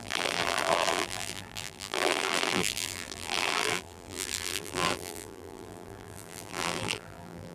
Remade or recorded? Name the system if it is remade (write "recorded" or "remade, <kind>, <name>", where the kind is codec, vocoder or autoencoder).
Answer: remade, vocoder, BigVGAN v2